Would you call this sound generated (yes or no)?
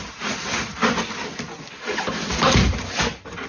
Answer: no